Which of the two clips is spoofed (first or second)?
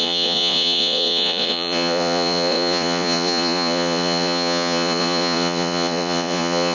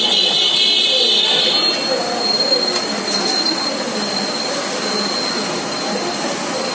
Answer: first